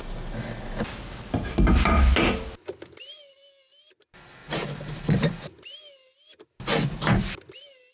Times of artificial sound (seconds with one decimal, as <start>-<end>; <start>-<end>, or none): none